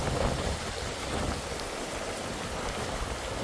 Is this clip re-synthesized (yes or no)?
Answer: no